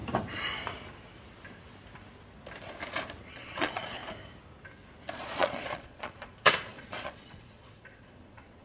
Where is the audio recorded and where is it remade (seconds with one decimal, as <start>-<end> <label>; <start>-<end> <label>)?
0.0-3.3 recorded; 3.3-4.0 remade; 4.0-5.1 recorded; 5.1-8.6 remade